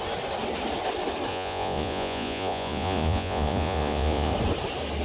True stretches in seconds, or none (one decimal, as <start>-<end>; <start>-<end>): 0.0-1.3; 4.3-5.0